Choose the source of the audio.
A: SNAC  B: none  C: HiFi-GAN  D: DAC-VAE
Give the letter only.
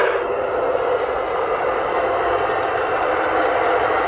B